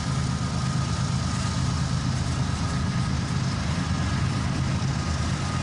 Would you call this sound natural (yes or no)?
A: yes